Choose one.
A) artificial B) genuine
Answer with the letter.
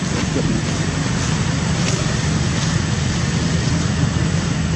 B